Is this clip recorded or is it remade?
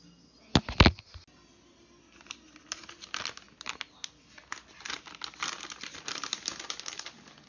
recorded